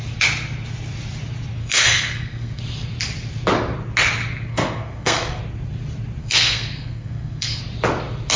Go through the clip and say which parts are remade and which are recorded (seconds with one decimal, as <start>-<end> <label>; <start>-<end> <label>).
0.0-1.6 recorded; 1.6-2.6 remade; 2.6-4.5 recorded; 4.5-5.4 remade; 5.4-6.2 recorded; 6.2-7.6 remade; 7.6-8.4 recorded

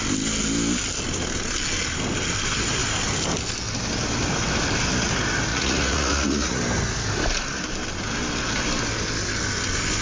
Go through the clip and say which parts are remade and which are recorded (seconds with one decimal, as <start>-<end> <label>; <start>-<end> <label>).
0.0-5.5 recorded; 5.5-6.6 remade; 6.6-10.0 recorded

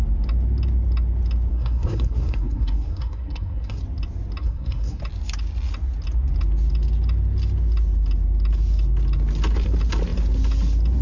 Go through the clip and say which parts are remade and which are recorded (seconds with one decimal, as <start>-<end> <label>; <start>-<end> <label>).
0.0-1.5 recorded; 1.5-3.8 remade; 3.8-4.4 recorded; 4.4-5.0 remade; 5.0-11.0 recorded

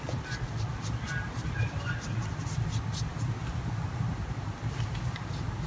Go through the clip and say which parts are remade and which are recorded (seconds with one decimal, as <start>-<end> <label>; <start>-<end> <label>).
0.0-5.7 recorded

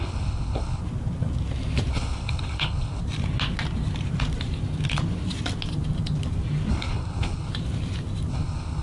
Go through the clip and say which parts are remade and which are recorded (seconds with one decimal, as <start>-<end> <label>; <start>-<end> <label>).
0.0-0.8 remade; 0.8-1.9 recorded; 1.9-3.0 remade; 3.0-6.7 recorded; 6.7-7.5 remade; 7.5-8.3 recorded; 8.3-8.8 remade

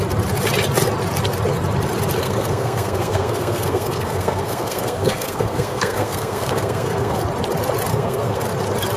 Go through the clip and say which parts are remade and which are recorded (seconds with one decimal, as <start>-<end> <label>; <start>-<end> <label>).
0.0-2.2 recorded; 2.2-7.2 remade; 7.2-7.9 recorded; 7.9-8.4 remade; 8.4-9.0 recorded

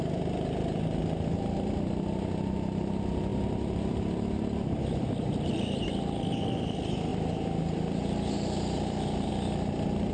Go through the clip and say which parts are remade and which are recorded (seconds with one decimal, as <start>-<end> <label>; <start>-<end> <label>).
0.0-10.1 recorded